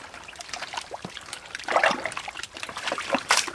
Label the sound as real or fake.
fake